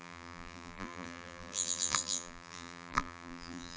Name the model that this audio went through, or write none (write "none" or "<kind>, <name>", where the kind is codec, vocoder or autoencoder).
vocoder, BigVGAN v2